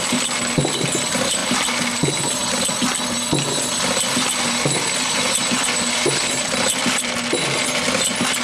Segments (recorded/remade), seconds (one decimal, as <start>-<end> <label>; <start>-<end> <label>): 0.0-8.4 recorded